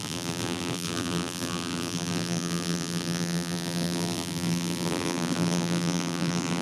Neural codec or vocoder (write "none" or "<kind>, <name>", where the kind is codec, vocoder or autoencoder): vocoder, BigVGAN v2